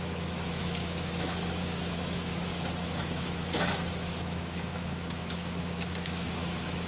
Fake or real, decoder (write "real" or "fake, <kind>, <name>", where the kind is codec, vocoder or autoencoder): fake, autoencoder, DAC-VAE